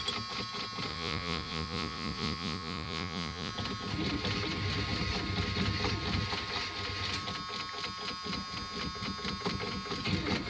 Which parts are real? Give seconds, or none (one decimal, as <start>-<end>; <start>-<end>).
0.0-0.9; 3.5-10.5